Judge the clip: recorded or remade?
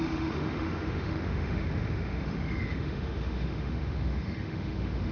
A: remade